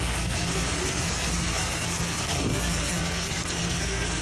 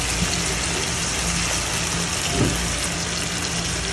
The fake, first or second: first